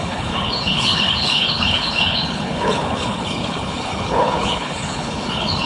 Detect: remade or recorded remade